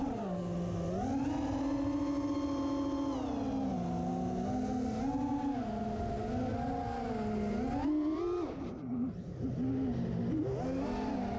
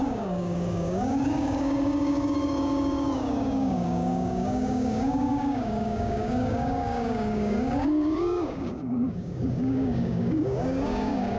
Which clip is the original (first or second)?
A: first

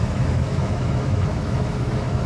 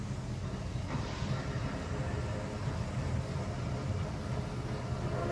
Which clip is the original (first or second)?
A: second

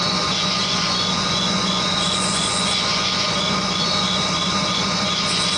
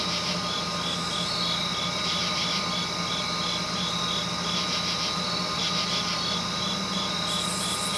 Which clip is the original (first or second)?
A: second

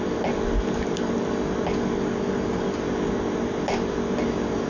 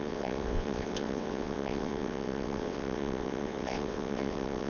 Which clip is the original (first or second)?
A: first